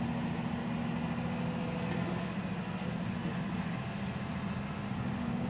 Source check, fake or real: real